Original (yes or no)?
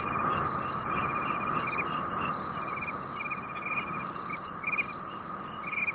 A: yes